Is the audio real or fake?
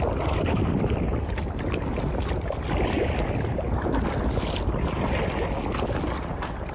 real